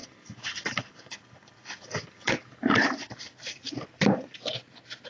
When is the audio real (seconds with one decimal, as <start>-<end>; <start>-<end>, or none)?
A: 3.1-5.1